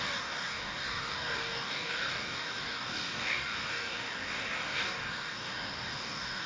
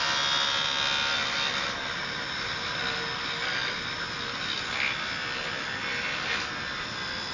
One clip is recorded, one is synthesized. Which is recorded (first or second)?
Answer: second